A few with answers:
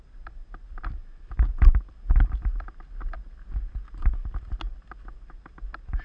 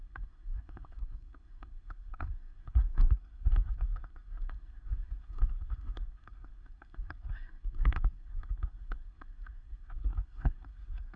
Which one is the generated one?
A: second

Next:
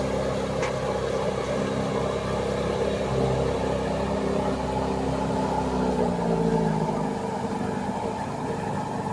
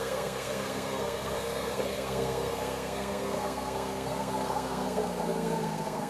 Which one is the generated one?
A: second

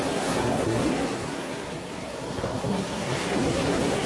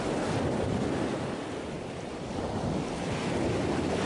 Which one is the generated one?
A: first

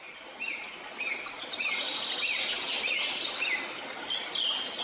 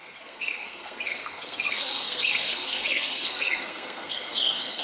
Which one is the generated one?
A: second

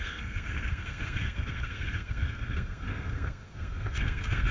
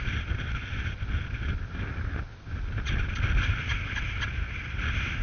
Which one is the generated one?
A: first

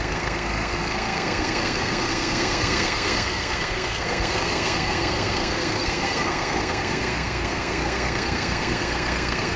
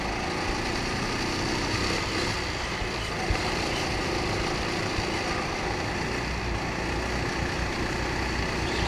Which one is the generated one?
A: first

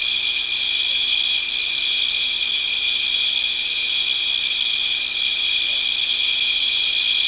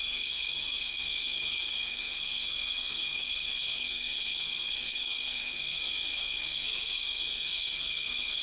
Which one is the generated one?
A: second